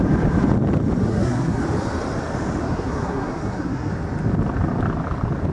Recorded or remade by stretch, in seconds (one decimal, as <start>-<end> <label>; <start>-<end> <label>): 0.0-1.0 recorded; 1.0-1.6 remade; 1.6-2.6 recorded; 2.6-3.9 remade; 3.9-5.5 recorded